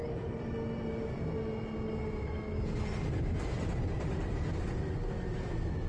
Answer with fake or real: real